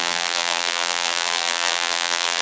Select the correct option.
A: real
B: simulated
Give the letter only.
B